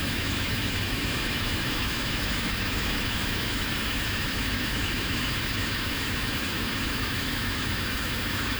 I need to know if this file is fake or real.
fake